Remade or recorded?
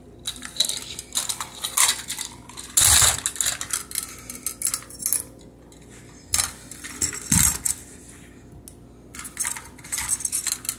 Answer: recorded